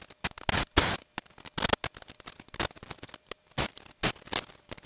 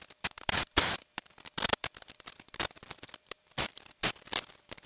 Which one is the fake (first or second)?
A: second